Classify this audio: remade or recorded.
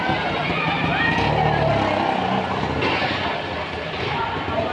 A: recorded